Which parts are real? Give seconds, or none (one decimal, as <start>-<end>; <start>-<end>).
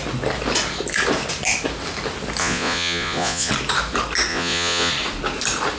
0.0-2.4; 3.5-4.3; 4.9-5.8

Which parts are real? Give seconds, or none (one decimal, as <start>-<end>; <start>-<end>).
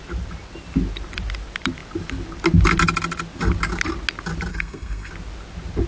0.0-4.5; 5.1-5.9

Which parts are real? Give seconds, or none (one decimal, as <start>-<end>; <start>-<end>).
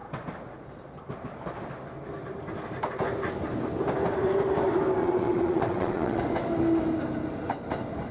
0.0-5.0; 6.2-8.1